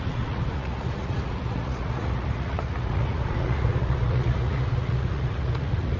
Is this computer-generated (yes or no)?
yes